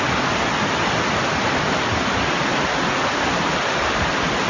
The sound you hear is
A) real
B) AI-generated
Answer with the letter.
A